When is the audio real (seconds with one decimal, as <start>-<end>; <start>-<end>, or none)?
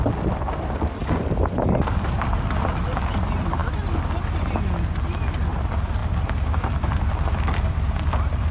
1.0-1.6; 3.6-5.5; 6.0-6.5